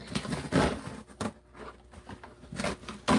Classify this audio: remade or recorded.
recorded